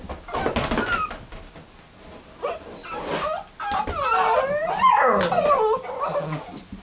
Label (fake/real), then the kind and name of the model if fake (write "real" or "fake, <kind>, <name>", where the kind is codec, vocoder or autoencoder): real